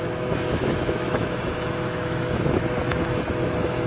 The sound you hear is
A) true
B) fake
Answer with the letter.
B